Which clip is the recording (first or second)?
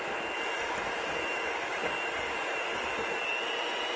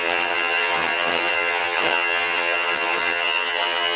first